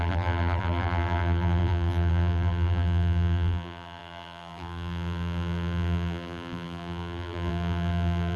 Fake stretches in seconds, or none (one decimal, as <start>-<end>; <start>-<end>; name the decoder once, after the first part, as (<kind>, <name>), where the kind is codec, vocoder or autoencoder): 0.0-8.4 (vocoder, BigVGAN v2)